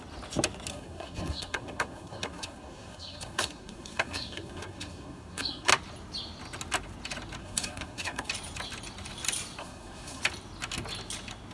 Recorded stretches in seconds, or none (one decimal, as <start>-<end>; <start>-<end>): 0.0-0.7; 5.7-7.4; 8.3-9.6; 10.2-11.5